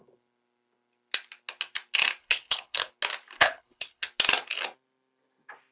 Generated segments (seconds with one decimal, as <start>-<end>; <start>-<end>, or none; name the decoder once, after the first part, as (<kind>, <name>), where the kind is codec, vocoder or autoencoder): 2.2-2.9 (codec, HILCodec); 3.4-4.1